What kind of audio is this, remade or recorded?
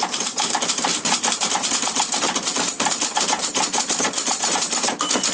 remade